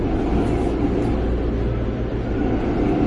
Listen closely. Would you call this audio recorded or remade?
recorded